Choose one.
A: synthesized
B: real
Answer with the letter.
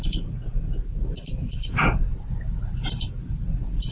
B